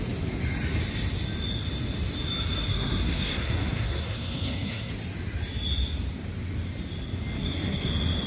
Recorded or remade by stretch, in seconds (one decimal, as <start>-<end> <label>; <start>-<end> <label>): 0.0-2.7 recorded; 2.7-4.9 remade; 4.9-7.4 recorded; 7.4-7.9 remade; 7.9-8.3 recorded